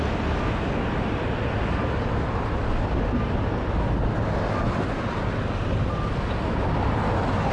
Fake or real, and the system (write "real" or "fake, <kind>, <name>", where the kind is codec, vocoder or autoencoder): real